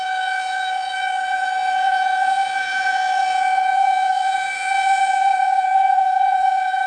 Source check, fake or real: fake